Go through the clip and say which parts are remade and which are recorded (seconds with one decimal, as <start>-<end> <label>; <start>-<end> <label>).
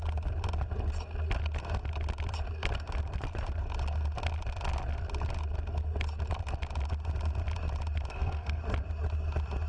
0.0-8.1 recorded; 8.1-8.6 remade; 8.6-9.7 recorded